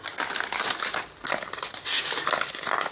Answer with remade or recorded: recorded